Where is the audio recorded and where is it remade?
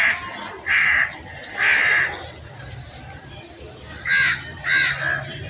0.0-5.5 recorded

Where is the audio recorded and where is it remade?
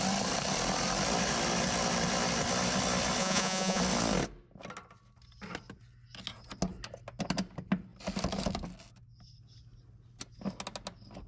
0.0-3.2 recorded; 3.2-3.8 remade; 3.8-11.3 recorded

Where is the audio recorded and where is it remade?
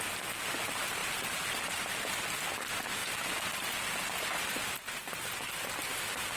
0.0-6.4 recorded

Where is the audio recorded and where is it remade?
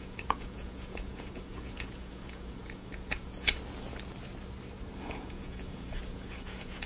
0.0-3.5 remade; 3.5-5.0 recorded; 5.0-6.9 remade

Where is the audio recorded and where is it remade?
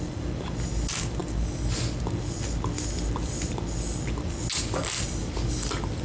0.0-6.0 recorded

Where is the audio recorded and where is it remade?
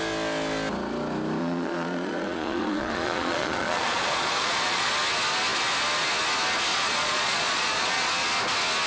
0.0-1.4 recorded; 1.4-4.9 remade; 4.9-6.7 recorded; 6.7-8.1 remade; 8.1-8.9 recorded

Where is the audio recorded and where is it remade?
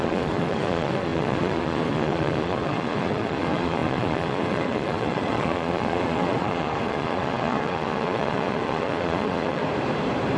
0.0-9.6 remade; 9.6-10.4 recorded